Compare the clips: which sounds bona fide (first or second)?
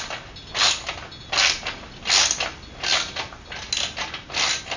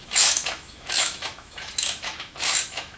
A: first